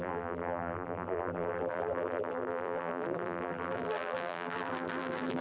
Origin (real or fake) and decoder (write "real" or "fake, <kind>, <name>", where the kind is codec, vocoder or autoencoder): fake, vocoder, BigVGAN v2